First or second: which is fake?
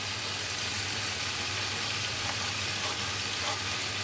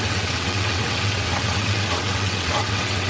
second